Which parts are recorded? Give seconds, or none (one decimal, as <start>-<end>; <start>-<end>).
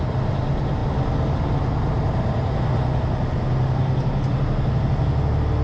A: 0.0-5.6